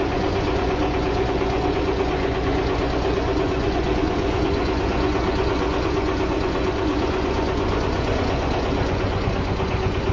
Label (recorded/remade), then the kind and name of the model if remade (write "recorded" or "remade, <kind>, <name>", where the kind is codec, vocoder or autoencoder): remade, vocoder, Vocos